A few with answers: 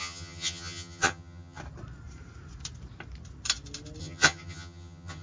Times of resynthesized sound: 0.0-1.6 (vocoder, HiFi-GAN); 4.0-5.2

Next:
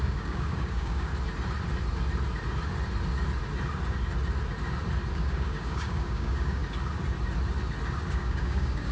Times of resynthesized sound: 0.0-1.1 (codec, DAC); 5.1-6.6; 8.1-8.9

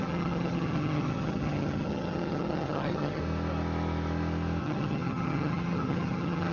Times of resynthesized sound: 0.0-3.2 (vocoder, HiFi-GAN); 4.6-6.5

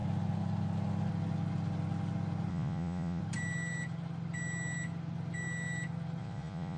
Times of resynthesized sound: 2.5-3.2 (vocoder, Vocos); 6.2-6.8

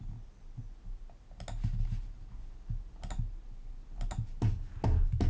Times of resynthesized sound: none

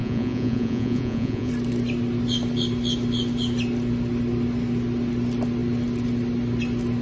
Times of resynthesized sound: 0.0-1.5 (vocoder, Vocos)

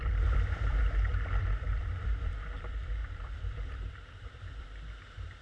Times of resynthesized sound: 0.0-5.4 (vocoder, BigVGAN v2)

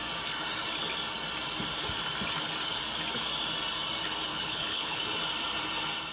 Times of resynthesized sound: 4.3-5.0 (codec, HILCodec)